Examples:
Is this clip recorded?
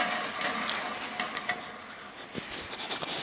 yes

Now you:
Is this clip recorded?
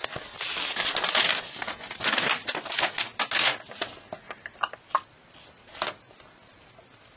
yes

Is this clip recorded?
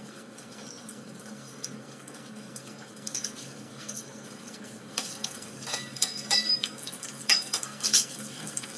no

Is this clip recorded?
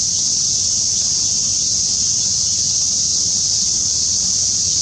yes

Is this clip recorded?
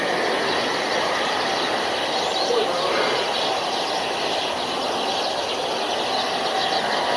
yes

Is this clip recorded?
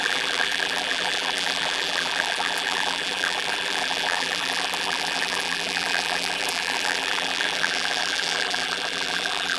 no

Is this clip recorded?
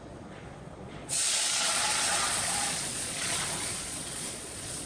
no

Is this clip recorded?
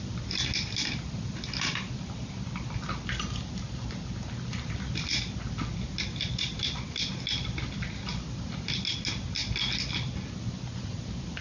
yes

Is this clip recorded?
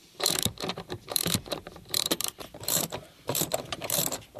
no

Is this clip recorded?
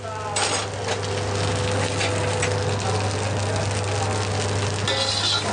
yes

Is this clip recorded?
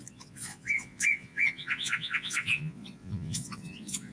no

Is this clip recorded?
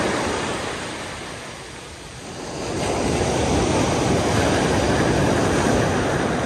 yes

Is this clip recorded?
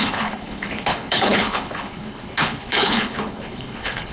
no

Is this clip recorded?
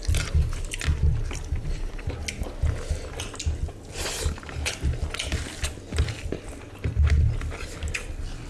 yes